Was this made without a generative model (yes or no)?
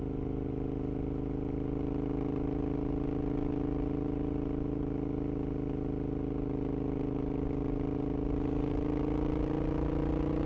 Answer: yes